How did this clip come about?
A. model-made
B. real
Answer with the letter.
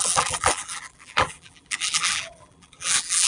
A